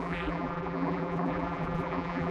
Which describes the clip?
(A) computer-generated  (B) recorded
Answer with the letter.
A